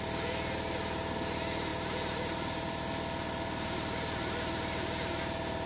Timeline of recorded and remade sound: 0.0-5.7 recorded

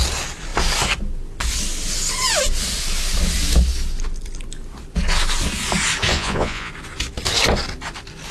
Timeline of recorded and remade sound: 0.0-6.1 recorded; 6.1-6.7 remade; 6.7-8.3 recorded

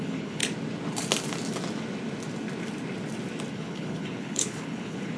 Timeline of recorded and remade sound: 0.0-0.4 remade; 0.4-3.5 recorded; 3.5-5.2 remade